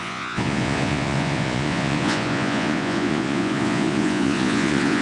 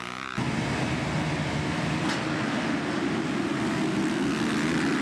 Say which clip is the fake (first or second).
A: first